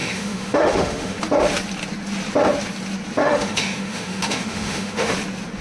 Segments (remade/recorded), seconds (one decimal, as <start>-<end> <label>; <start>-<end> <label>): 0.0-1.2 remade; 1.2-3.2 recorded; 3.2-5.1 remade; 5.1-5.6 recorded